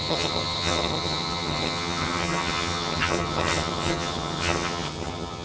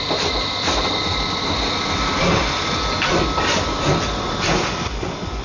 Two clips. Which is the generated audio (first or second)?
first